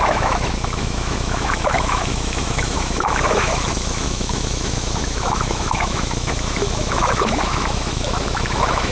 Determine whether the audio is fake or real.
fake